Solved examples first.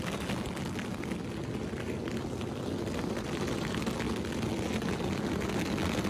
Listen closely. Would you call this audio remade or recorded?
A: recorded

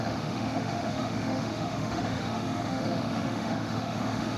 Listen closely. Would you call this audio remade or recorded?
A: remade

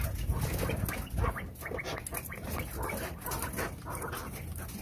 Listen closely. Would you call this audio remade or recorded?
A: recorded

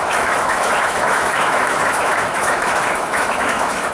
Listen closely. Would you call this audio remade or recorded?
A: remade